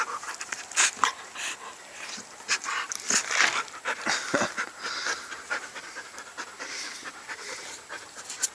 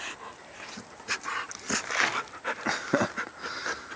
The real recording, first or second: second